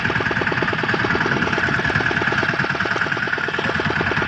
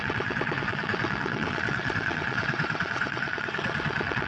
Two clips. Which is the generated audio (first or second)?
second